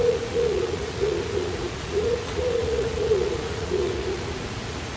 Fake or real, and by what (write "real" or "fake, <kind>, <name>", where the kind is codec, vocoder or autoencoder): fake, vocoder, Vocos